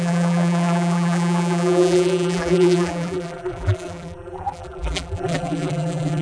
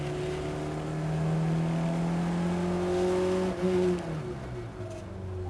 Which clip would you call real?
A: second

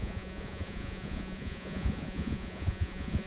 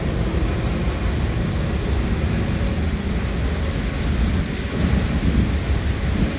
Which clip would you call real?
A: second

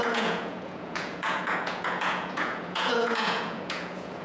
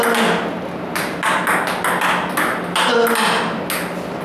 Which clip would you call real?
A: second